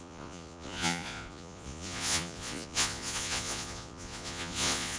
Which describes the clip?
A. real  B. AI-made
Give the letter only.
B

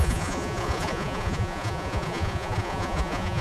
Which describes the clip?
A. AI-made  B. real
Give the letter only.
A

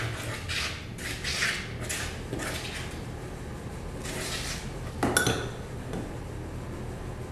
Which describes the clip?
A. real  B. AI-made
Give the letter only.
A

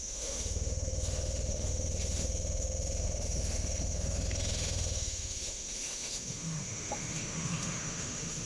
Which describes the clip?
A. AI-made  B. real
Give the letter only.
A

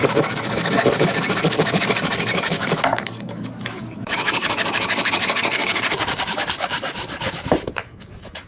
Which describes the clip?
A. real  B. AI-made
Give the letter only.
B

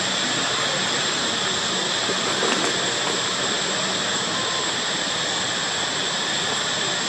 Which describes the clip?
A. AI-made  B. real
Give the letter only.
B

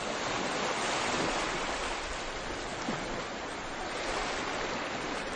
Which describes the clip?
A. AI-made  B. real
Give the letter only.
B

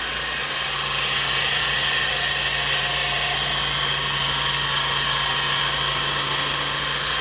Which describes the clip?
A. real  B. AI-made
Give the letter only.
A